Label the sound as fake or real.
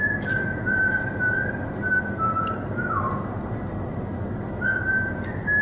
real